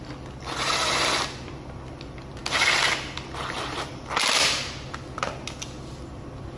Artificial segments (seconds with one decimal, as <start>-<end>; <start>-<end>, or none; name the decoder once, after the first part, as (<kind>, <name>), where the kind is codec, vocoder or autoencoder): none